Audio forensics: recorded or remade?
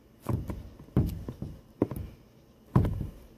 recorded